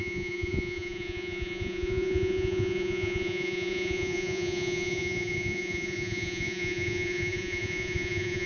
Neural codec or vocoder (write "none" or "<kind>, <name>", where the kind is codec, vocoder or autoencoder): vocoder, Vocos